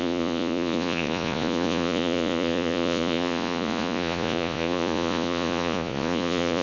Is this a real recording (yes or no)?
no